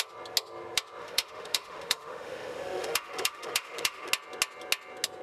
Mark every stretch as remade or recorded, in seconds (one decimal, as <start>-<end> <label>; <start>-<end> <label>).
0.0-1.0 recorded; 1.0-4.1 remade; 4.1-5.2 recorded